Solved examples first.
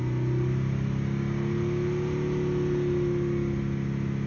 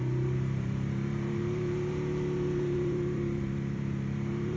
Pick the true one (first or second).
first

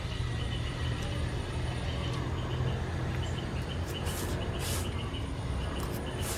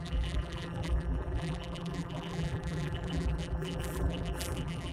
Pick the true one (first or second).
first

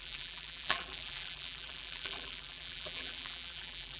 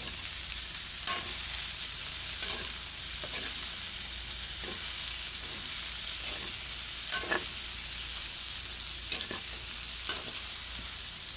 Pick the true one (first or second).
second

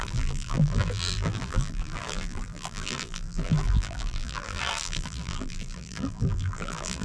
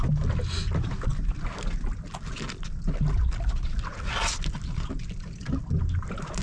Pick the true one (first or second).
second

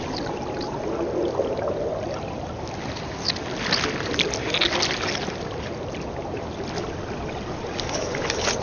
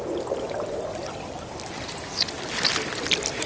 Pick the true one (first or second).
first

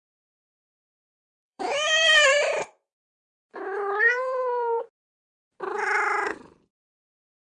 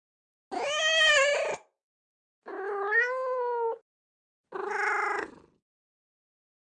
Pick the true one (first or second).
second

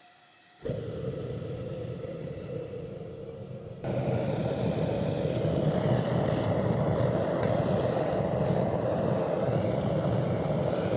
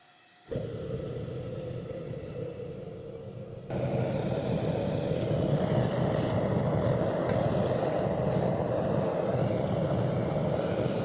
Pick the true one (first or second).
second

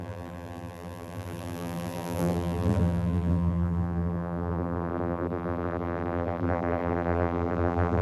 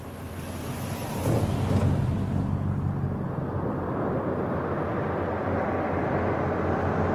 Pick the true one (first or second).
second